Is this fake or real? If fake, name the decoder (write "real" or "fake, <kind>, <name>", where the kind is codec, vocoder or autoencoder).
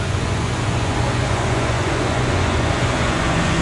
fake, vocoder, Vocos